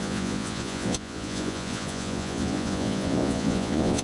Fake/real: fake